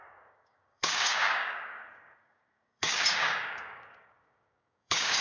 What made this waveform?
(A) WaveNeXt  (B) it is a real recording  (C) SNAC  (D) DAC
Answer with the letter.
D